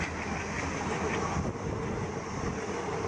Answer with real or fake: real